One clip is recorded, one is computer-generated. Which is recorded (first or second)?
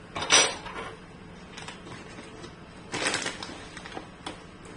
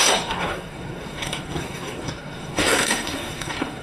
first